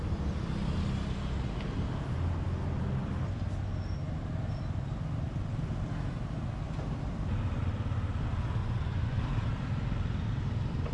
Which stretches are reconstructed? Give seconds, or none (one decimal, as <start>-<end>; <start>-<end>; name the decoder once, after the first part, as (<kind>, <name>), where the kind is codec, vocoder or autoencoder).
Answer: 8.6-9.2 (vocoder, Vocos)